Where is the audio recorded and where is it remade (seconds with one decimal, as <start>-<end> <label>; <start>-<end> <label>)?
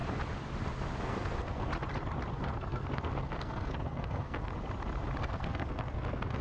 0.0-1.0 recorded; 1.0-1.7 remade; 1.7-2.3 recorded; 2.3-4.5 remade; 4.5-5.2 recorded; 5.2-6.4 remade